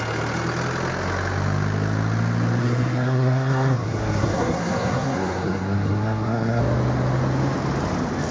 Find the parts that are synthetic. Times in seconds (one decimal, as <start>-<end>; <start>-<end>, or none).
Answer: 2.6-6.6